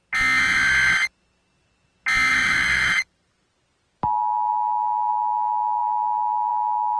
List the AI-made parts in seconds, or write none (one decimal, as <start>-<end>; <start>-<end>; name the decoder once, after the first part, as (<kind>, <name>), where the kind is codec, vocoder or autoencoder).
2.3-3.5 (vocoder, BigVGAN v2)